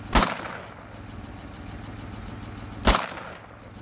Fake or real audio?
real